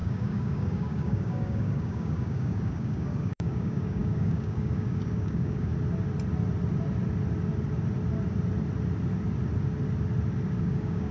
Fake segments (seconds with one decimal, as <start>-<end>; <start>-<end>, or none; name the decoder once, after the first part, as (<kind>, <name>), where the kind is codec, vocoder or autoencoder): 0.0-5.7 (codec, DAC); 10.6-11.1